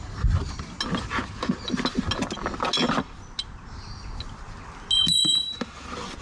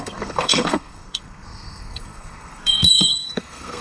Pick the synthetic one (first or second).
second